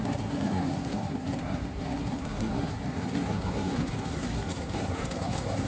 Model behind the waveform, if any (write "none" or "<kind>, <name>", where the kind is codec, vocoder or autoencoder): codec, SNAC